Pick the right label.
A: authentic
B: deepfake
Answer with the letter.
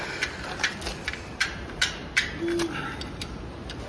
A